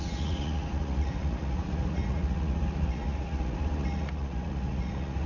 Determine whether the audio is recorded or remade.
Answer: remade